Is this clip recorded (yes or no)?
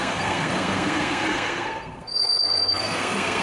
no